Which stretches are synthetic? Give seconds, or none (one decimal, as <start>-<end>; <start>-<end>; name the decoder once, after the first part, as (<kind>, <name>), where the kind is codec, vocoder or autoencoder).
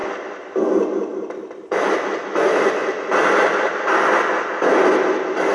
0.0-0.6 (vocoder, BigVGAN v2); 2.8-4.7